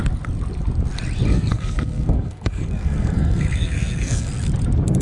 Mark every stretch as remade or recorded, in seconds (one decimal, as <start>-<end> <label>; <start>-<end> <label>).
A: 0.0-1.3 recorded; 1.3-4.3 remade; 4.3-5.0 recorded

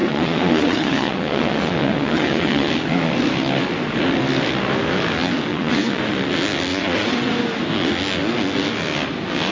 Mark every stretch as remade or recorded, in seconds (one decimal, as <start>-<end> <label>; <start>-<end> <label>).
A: 0.0-2.7 remade; 2.7-5.5 recorded; 5.5-6.0 remade; 6.0-6.7 recorded; 6.7-7.3 remade; 7.3-9.5 recorded

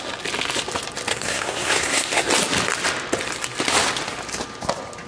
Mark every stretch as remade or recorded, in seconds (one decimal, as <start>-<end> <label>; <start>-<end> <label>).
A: 0.0-1.1 recorded; 1.1-2.3 remade; 2.3-5.1 recorded

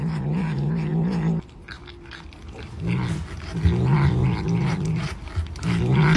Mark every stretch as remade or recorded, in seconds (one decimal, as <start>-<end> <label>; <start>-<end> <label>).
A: 0.0-6.2 recorded

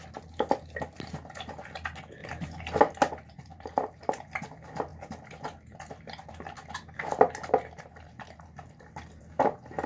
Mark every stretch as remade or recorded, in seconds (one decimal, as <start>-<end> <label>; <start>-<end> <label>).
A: 0.0-3.2 recorded; 3.2-4.2 remade; 4.2-9.9 recorded

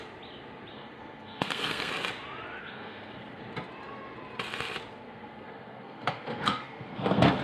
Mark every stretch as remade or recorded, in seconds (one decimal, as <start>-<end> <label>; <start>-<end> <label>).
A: 0.0-0.7 recorded; 0.7-1.9 remade; 1.9-2.6 recorded; 2.6-3.4 remade; 3.4-4.9 recorded; 4.9-7.4 remade

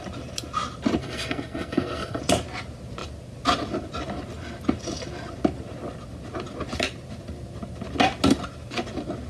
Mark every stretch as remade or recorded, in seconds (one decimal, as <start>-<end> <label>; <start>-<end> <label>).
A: 0.0-1.0 recorded; 1.0-2.2 remade; 2.2-9.3 recorded